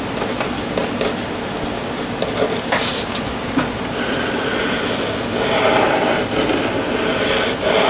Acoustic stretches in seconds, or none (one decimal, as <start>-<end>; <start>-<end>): 0.0-7.9

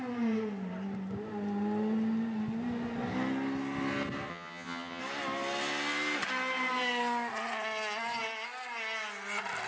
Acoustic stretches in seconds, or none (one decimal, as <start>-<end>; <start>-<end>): 0.0-4.3; 5.0-9.7

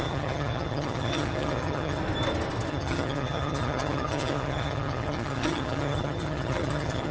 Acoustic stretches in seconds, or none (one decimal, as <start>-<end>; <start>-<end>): 2.0-2.7

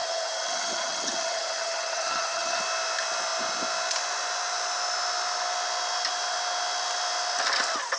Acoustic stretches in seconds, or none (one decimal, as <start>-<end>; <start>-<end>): 2.6-8.0

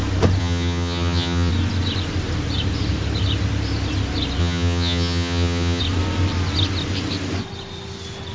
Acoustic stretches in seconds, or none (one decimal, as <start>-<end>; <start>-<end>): 0.0-0.4; 1.5-4.4; 5.8-8.3

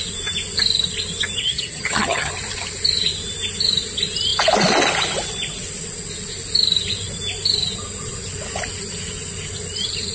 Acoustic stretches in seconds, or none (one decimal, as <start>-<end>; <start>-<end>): 0.0-1.4; 2.3-10.1

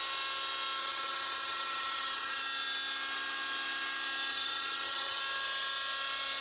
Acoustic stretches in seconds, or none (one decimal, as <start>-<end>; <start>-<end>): 0.0-0.8; 2.4-4.3; 5.2-6.4

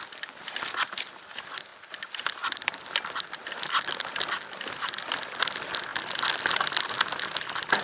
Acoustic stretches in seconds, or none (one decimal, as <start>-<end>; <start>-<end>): 0.0-7.8